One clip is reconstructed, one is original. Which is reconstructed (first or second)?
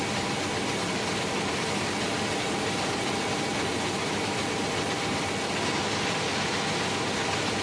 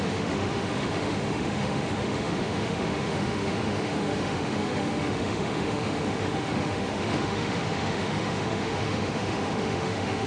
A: second